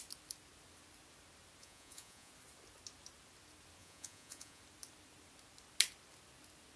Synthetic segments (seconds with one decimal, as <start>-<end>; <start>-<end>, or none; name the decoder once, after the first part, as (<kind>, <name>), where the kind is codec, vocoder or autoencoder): 1.6-2.3 (vocoder, Vocos); 3.8-4.6